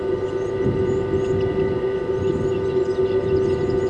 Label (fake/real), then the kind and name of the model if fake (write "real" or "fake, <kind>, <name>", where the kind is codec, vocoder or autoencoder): real